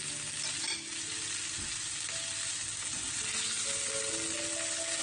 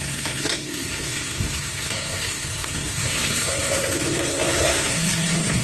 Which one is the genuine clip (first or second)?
first